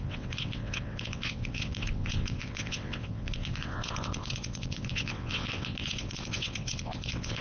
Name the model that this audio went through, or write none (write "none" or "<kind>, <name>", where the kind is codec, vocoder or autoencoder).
vocoder, WaveNeXt